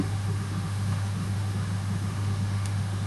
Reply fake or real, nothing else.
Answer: fake